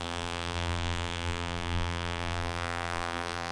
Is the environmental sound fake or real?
fake